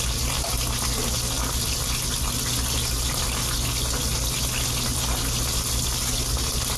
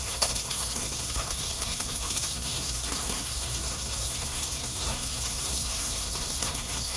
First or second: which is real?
first